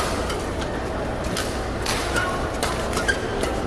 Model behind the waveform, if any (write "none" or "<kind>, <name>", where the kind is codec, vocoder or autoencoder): none